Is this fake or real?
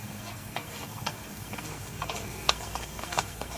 fake